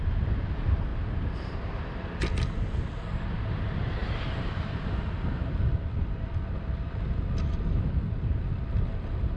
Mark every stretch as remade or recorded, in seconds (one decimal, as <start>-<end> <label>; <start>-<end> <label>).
0.0-0.9 recorded; 0.9-1.8 remade; 1.8-4.0 recorded; 4.0-5.5 remade; 5.5-9.4 recorded